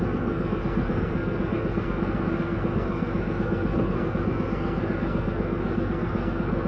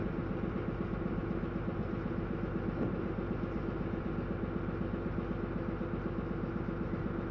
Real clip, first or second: second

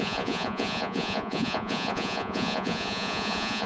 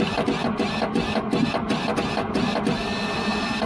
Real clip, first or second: second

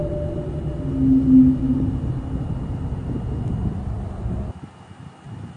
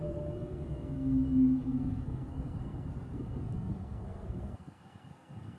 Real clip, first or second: first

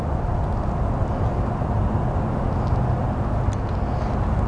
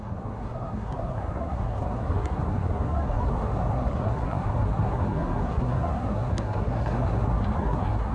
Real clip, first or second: first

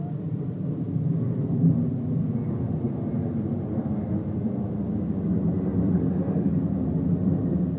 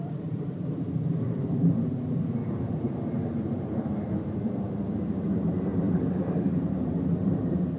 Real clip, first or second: first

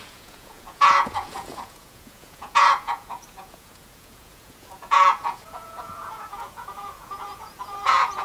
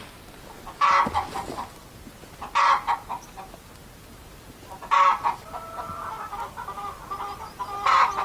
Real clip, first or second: second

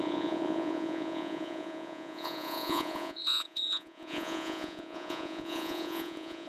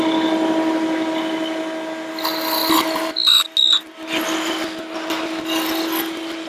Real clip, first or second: second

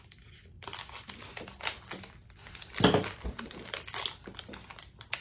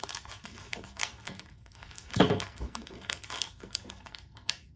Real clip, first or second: first